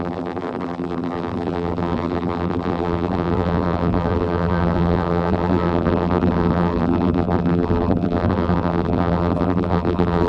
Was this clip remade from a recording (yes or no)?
yes